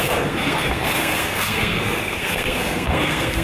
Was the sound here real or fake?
fake